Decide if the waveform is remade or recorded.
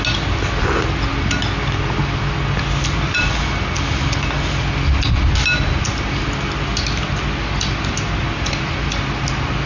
recorded